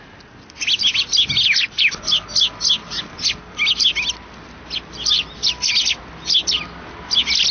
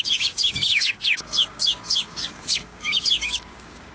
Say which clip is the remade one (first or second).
second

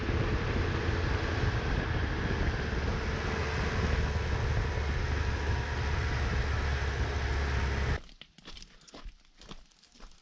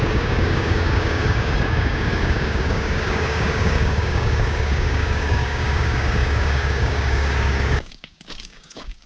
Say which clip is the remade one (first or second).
second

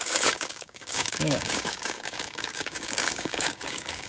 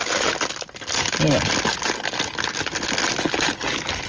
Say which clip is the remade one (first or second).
first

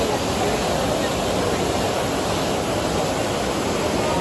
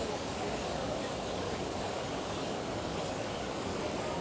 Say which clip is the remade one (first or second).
second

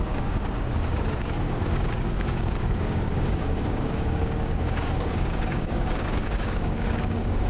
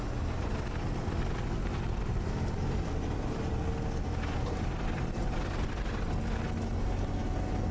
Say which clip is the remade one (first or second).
first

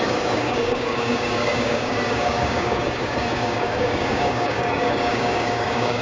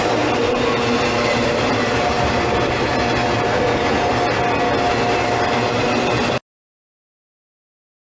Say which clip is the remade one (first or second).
first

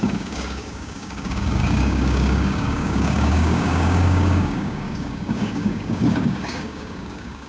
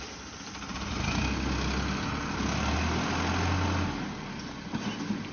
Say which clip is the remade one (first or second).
first